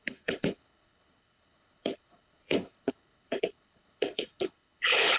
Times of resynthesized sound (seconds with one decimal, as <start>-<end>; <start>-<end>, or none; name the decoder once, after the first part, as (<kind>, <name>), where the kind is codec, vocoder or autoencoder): 0.0-5.2 (codec, HILCodec)